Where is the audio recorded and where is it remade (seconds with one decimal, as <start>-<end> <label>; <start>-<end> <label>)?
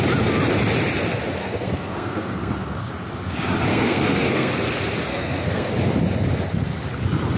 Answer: 0.0-1.4 recorded; 1.4-2.9 remade; 2.9-3.7 recorded; 3.7-4.5 remade; 4.5-5.1 recorded; 5.1-5.7 remade; 5.7-7.4 recorded